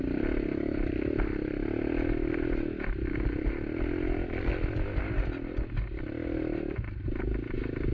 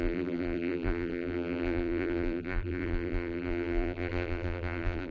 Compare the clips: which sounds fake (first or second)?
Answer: second